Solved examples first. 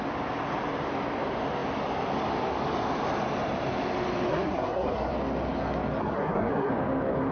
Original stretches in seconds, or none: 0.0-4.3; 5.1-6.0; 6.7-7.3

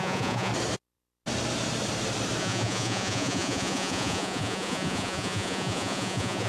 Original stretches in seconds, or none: 0.5-2.4

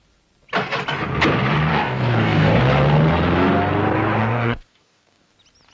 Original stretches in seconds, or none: 0.0-1.7; 2.6-4.2; 5.3-5.7